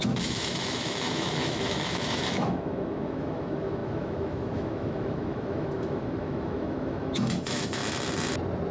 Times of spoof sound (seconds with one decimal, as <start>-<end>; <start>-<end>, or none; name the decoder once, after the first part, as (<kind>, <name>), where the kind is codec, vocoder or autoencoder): 0.0-7.8 (autoencoder, DAC-VAE)